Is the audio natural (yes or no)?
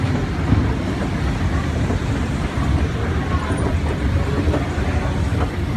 no